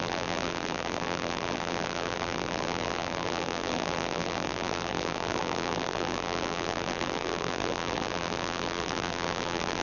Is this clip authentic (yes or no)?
no